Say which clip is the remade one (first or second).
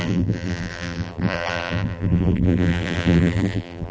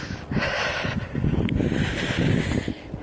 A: first